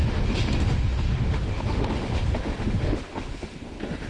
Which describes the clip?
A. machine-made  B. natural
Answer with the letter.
A